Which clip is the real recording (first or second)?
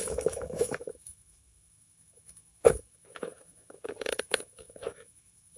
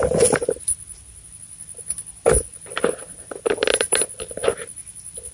second